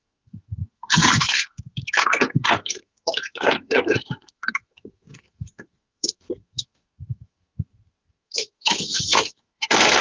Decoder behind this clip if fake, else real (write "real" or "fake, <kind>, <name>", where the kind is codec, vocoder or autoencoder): fake, codec, SNAC